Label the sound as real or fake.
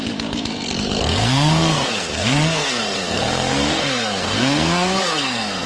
fake